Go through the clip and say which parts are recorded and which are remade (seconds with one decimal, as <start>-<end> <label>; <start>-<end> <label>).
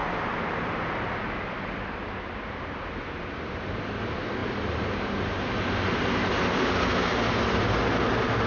0.0-1.1 remade; 1.1-4.4 recorded; 4.4-7.8 remade; 7.8-8.5 recorded